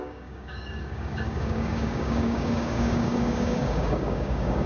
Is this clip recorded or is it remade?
remade